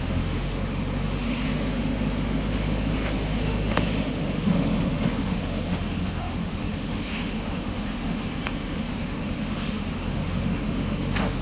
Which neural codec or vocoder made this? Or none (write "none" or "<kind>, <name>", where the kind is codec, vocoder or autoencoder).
autoencoder, DAC-VAE